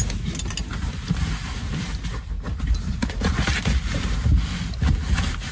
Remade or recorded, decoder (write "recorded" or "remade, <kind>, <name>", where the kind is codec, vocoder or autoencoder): recorded